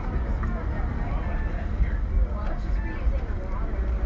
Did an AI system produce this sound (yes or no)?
no